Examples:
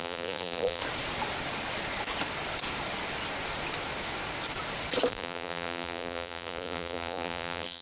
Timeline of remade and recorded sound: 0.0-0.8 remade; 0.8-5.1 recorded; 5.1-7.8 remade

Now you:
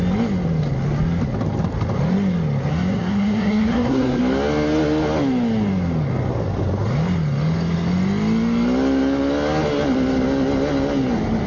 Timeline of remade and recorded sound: 0.0-2.7 recorded; 2.7-4.2 remade; 4.2-11.5 recorded

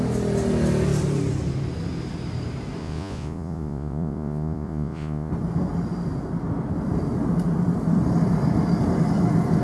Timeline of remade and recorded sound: 0.0-2.8 recorded; 2.8-5.3 remade; 5.3-9.6 recorded

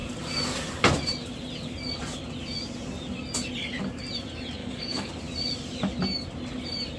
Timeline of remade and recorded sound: 0.0-4.6 recorded; 4.6-5.1 remade; 5.1-7.0 recorded

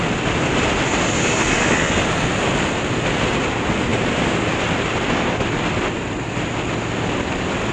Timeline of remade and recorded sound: 0.0-7.7 recorded

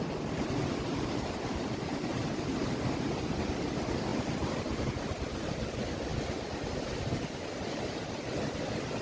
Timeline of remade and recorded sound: 0.0-9.0 recorded

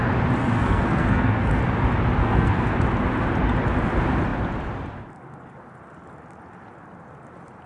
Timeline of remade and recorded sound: 0.0-0.4 recorded; 0.4-1.6 remade; 1.6-2.2 recorded; 2.2-2.8 remade; 2.8-7.7 recorded